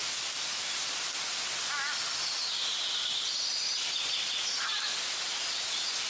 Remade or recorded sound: recorded